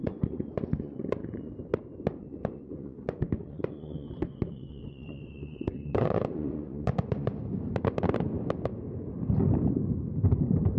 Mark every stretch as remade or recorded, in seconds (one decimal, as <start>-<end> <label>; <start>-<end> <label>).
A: 0.0-1.5 remade; 1.5-2.2 recorded; 2.2-7.4 remade; 7.4-10.8 recorded